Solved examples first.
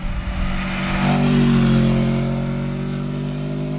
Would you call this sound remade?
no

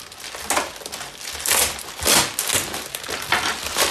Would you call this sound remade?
no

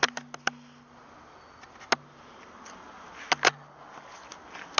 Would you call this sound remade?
no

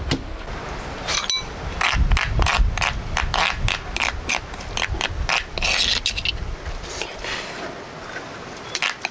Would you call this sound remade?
no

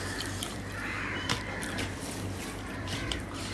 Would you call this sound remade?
yes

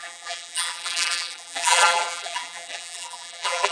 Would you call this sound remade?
yes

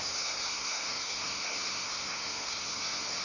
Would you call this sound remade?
yes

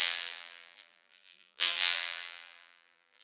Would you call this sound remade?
yes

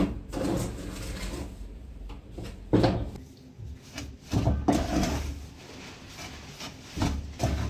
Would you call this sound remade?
no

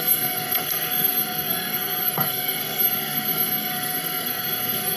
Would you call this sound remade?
yes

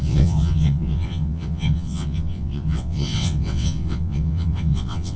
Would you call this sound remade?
yes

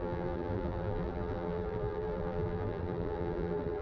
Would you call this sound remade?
yes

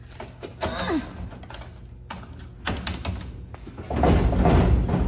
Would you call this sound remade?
no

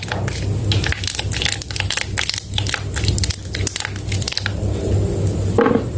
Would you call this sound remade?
no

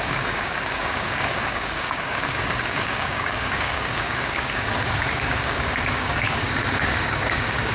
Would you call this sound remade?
yes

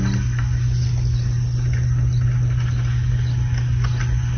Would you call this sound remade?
no